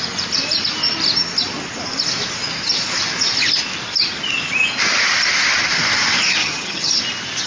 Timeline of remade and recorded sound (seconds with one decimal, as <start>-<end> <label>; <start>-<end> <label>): 0.0-6.4 recorded; 6.4-7.0 remade; 7.0-7.5 recorded